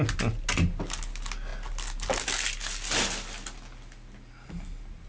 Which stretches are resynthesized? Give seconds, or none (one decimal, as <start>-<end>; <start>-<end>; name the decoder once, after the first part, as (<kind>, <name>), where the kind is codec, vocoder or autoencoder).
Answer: none